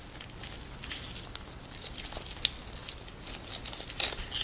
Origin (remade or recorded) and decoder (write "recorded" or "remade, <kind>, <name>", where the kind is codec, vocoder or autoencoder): recorded